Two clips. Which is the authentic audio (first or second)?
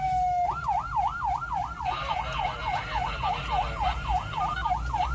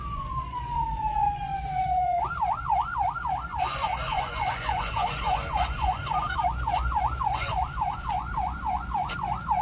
first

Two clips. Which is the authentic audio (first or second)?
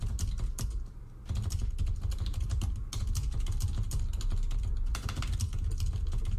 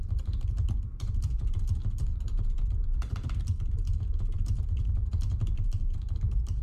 first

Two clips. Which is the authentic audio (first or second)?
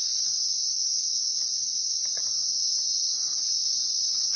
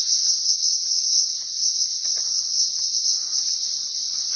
first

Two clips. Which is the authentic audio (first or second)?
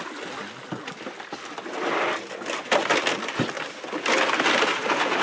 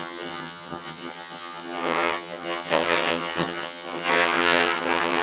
first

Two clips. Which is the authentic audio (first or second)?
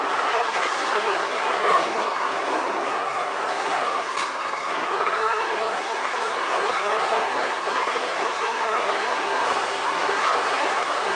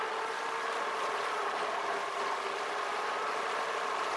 second